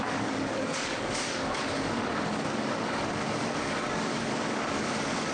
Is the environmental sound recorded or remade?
remade